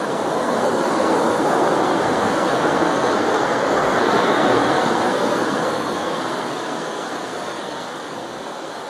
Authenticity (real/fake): fake